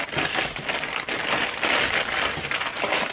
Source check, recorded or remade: recorded